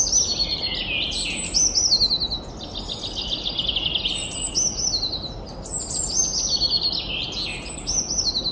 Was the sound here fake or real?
real